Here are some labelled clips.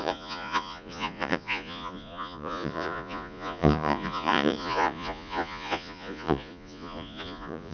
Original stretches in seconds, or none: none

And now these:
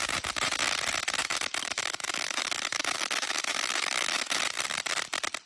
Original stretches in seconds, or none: 0.0-1.2; 4.4-5.5

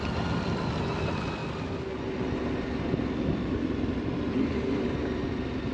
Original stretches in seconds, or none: 0.0-5.7

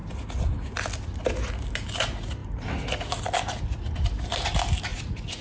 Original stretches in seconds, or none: 0.0-4.9

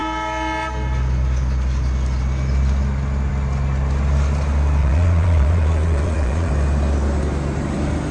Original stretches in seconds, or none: 0.0-4.8; 6.5-8.1

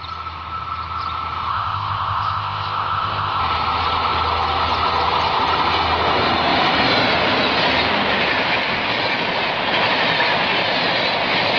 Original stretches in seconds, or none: 0.0-1.5; 3.4-11.6

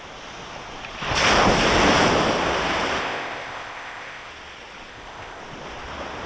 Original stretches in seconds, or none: 0.0-3.0; 4.3-4.9; 5.4-6.3

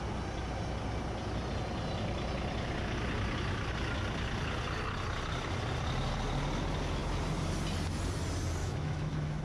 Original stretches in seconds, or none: 0.0-8.6